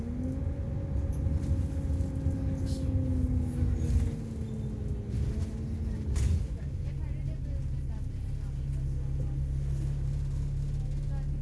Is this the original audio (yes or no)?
yes